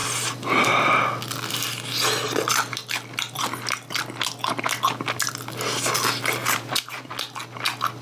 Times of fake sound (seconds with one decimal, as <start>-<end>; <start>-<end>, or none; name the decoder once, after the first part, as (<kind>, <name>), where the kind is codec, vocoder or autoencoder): 6.4-7.1 (vocoder, BigVGAN v2)